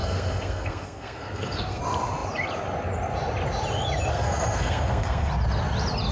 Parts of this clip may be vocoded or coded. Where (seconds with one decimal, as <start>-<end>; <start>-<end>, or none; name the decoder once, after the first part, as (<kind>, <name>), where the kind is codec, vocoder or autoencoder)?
0.0-1.8 (codec, SNAC); 4.1-5.3